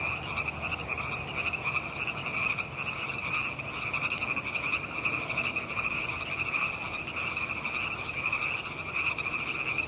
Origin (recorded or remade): remade